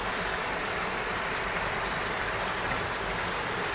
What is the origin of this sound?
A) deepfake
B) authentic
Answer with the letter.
B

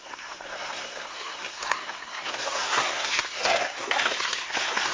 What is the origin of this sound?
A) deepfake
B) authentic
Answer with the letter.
A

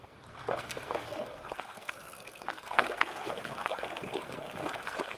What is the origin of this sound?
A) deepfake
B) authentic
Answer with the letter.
A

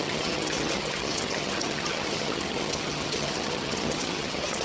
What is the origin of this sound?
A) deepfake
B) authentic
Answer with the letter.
A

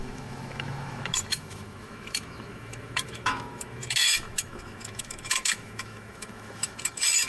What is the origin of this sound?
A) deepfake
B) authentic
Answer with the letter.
A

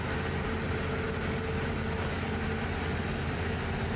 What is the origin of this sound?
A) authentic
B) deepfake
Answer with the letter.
A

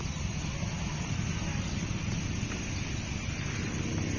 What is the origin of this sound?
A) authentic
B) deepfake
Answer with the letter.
A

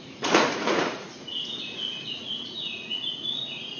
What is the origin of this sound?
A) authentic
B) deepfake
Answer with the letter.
B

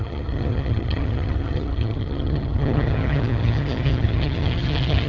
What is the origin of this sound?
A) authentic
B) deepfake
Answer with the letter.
B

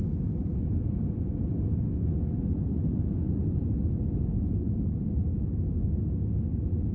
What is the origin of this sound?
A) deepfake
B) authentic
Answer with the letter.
B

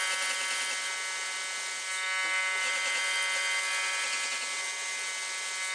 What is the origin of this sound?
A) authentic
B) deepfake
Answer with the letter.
A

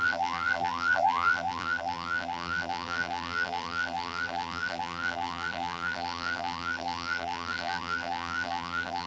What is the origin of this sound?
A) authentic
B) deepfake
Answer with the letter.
B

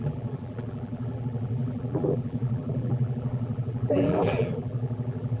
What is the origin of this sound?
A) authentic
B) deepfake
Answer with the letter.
B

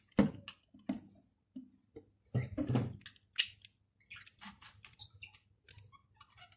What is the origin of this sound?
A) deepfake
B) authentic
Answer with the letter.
B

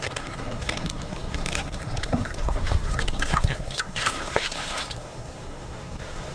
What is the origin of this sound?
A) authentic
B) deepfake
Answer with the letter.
B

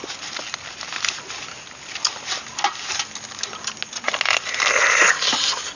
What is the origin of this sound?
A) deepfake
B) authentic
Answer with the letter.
B